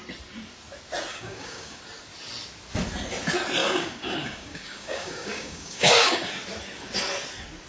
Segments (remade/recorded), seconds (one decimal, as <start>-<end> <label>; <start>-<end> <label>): 0.0-1.1 recorded; 1.1-1.8 remade; 1.8-3.6 recorded; 3.6-6.3 remade; 6.3-7.7 recorded